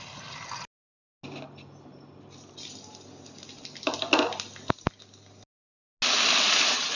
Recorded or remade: recorded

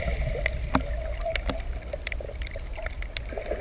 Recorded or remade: recorded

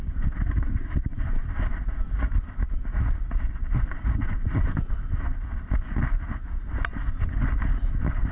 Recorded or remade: recorded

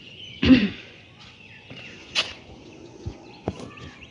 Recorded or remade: remade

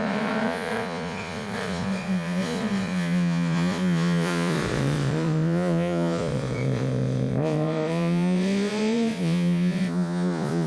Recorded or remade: remade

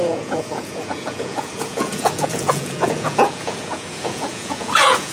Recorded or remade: remade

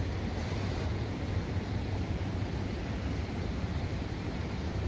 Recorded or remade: recorded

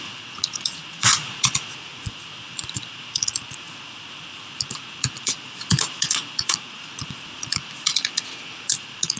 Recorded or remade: remade